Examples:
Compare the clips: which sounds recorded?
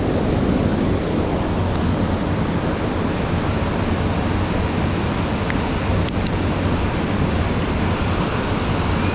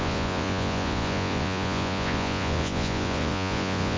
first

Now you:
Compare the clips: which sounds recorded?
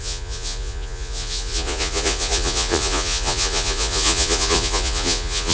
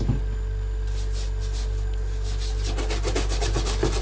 second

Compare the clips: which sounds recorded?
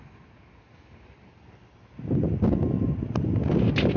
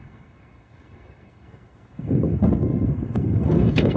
first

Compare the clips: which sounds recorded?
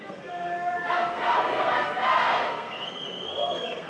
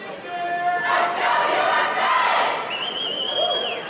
second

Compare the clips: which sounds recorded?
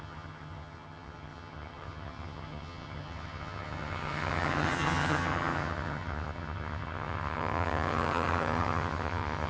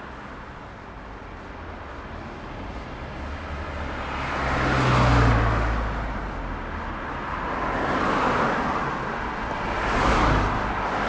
second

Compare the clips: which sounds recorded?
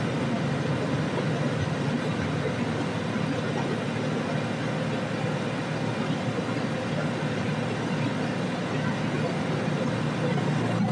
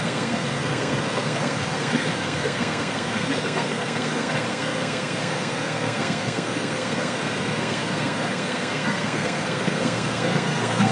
first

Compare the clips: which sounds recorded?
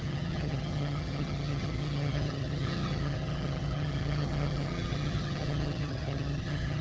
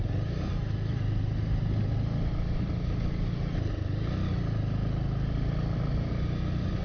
second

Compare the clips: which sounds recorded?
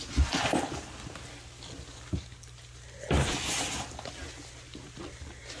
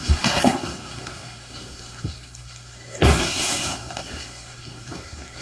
first